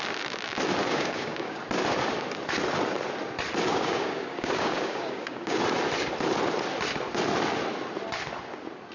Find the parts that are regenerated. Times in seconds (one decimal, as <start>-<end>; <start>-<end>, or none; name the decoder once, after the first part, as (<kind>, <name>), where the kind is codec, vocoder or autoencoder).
0.8-1.6 (codec, DAC); 3.7-5.6